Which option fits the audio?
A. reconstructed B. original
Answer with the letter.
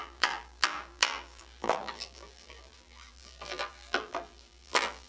A